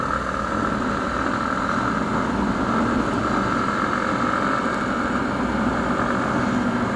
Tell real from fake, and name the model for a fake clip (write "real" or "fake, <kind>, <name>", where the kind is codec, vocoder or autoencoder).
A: real